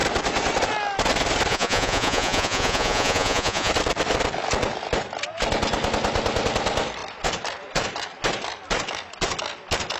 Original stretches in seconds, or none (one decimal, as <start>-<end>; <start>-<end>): 0.0-1.5; 3.7-10.0